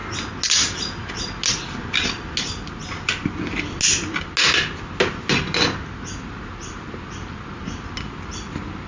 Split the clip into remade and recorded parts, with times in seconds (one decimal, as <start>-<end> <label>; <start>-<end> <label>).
0.0-8.9 recorded